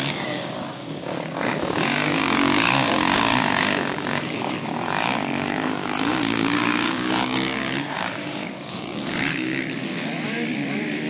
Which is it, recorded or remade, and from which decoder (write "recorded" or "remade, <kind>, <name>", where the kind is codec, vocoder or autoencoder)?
remade, codec, DAC